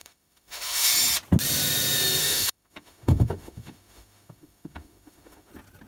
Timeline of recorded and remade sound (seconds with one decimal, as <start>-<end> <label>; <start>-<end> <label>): 0.0-0.9 remade; 0.9-2.2 recorded; 2.2-5.5 remade; 5.5-5.9 recorded